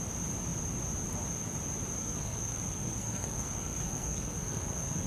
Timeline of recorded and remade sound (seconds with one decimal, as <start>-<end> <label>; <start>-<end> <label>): 0.0-2.0 recorded; 2.0-5.1 remade